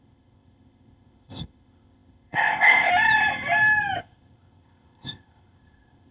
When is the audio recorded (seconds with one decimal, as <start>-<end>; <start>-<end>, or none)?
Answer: 2.9-4.0